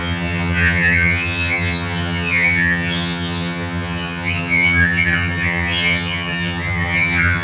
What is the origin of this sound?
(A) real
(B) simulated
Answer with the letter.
B